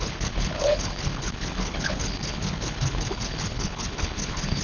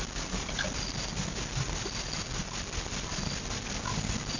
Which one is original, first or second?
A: second